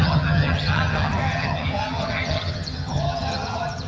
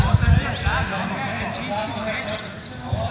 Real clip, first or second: second